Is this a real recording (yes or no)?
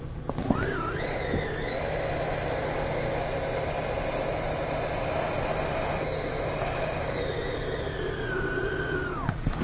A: yes